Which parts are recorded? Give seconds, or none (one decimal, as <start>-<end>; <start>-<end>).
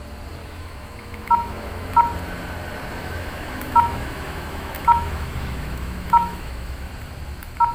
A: 0.0-0.4; 1.9-3.0; 6.9-7.7